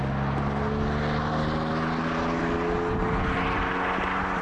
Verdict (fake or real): real